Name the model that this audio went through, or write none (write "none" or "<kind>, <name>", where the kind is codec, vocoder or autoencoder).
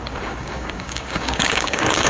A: codec, DAC